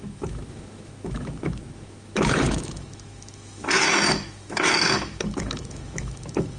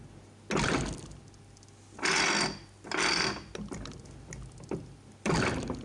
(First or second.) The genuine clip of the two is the second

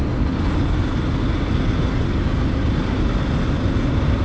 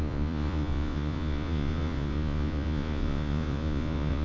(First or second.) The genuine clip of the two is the first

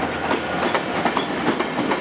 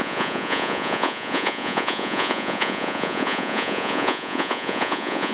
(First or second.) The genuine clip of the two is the first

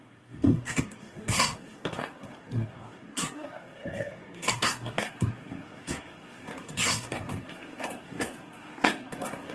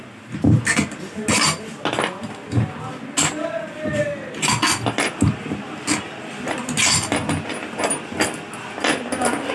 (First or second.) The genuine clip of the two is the second